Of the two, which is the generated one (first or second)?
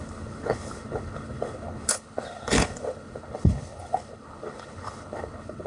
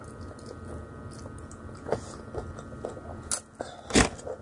first